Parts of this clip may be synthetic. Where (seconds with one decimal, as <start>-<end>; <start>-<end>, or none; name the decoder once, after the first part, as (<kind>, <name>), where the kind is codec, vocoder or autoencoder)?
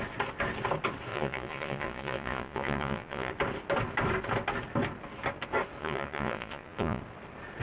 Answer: 1.1-3.3 (vocoder, Vocos); 5.8-7.0